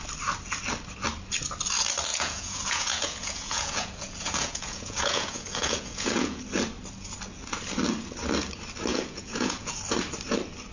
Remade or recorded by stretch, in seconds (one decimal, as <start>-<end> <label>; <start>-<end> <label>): 0.0-2.1 recorded; 2.1-6.4 remade; 6.4-8.9 recorded; 8.9-9.8 remade; 9.8-10.7 recorded